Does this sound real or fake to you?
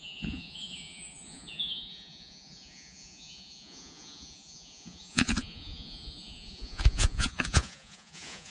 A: fake